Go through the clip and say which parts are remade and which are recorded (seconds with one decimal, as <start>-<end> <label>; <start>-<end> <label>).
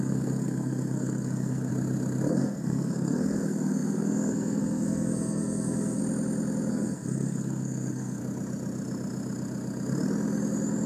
0.0-1.7 remade; 1.7-2.3 recorded; 2.3-6.0 remade; 6.0-6.7 recorded; 6.7-8.2 remade; 8.2-10.9 recorded